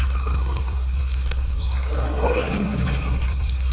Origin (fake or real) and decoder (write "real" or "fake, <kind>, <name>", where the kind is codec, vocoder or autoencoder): fake, codec, SNAC